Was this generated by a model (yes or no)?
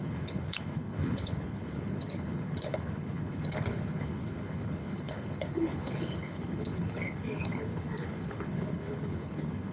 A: yes